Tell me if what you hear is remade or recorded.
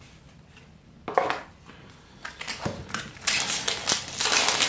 recorded